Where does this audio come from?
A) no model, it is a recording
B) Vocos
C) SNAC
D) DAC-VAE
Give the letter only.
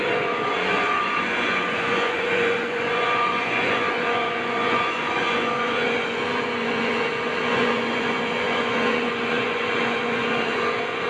B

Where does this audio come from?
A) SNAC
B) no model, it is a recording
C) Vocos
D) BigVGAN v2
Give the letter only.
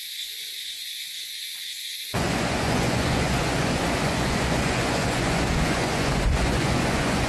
C